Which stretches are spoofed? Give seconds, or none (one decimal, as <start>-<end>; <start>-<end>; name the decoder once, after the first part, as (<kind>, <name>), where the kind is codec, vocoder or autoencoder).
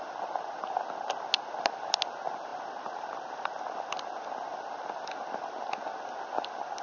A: none